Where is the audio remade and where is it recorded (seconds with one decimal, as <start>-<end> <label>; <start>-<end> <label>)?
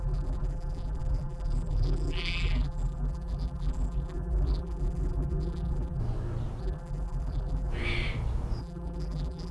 0.0-6.0 remade; 6.0-6.6 recorded; 6.6-7.7 remade; 7.7-8.6 recorded; 8.6-9.5 remade